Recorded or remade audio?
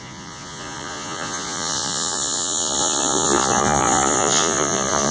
remade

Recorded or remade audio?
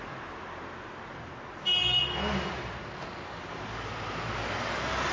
recorded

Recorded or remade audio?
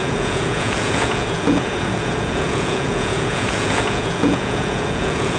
remade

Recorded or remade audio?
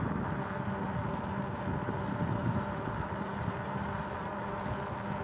recorded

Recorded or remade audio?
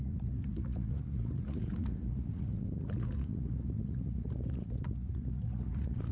remade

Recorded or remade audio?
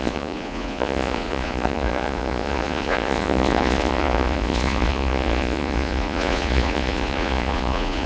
remade